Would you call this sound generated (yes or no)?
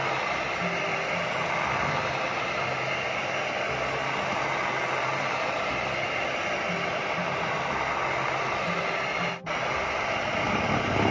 no